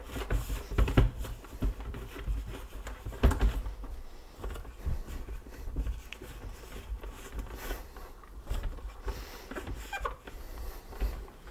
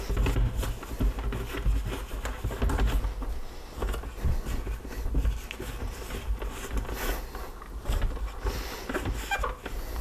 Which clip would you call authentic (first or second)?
second